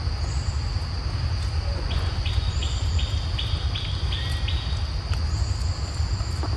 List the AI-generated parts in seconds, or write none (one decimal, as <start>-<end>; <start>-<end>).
1.7-3.0